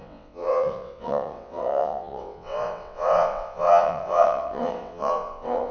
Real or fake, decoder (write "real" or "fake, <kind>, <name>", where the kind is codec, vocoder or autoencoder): fake, vocoder, WaveNeXt